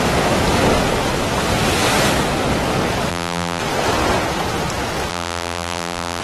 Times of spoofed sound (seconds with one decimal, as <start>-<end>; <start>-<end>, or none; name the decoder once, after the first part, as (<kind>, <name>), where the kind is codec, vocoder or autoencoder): 3.1-3.6 (vocoder, BigVGAN v2); 5.1-6.2